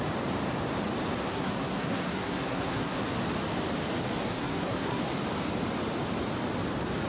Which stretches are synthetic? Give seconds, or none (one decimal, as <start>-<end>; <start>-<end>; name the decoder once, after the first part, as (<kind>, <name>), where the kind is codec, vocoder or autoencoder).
1.2-3.0 (codec, SNAC); 4.2-5.0